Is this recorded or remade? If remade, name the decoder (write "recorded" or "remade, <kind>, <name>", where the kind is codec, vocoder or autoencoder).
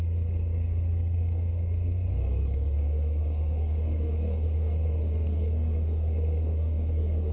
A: remade, codec, SNAC